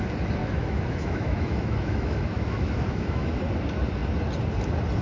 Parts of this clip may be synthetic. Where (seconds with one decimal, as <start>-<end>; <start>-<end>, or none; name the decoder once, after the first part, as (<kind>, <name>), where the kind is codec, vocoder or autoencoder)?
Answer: 0.4-3.4 (autoencoder, DAC-VAE)